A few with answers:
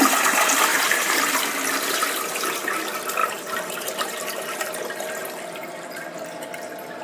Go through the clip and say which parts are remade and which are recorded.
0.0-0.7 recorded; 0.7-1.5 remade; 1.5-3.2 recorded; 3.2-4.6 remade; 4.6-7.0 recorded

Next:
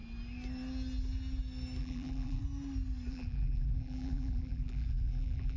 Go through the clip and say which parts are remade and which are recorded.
0.0-1.8 recorded; 1.8-2.4 remade; 2.4-3.1 recorded; 3.1-5.6 remade

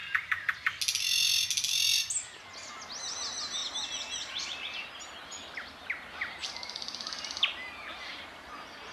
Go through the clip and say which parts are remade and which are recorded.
0.0-6.4 recorded; 6.4-8.2 remade; 8.2-8.9 recorded